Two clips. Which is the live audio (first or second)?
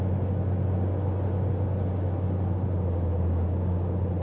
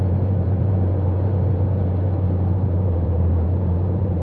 first